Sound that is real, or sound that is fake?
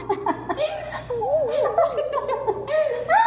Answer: real